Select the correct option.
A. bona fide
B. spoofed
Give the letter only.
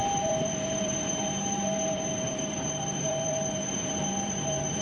B